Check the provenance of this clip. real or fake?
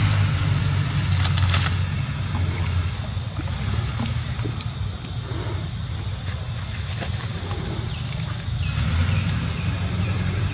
real